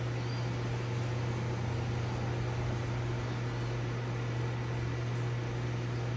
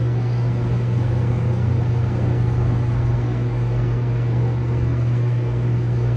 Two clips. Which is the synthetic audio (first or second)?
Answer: second